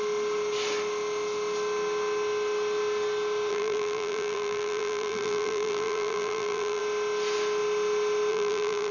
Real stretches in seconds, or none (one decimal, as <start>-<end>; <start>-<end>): 0.0-3.5; 6.8-8.3